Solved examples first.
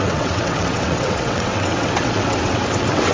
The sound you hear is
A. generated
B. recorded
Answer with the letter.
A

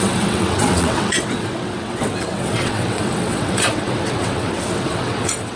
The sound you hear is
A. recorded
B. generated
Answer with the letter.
B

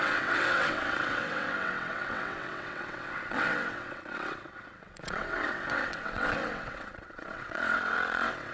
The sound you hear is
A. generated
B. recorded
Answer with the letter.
A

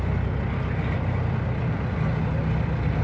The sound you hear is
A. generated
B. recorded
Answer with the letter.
B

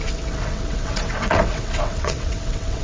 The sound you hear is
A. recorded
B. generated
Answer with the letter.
B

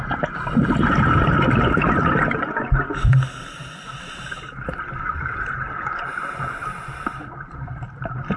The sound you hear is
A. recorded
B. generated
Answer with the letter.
A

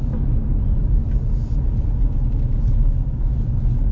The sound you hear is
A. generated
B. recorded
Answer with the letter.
B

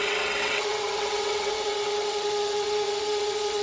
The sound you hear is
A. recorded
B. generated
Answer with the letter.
B